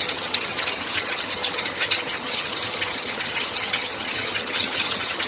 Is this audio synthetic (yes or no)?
yes